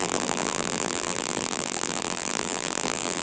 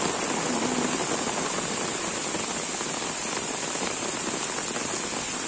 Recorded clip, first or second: second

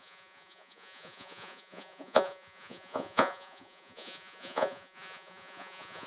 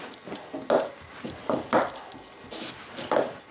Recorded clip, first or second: second